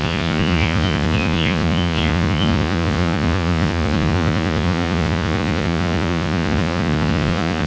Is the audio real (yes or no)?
no